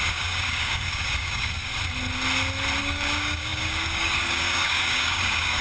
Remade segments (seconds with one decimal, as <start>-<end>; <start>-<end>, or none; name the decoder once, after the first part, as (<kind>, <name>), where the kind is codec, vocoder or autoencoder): 0.0-1.7 (codec, DAC); 2.8-5.6